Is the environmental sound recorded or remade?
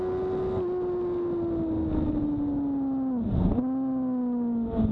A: recorded